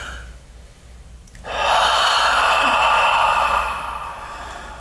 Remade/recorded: recorded